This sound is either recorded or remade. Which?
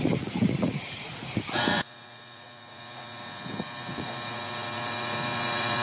remade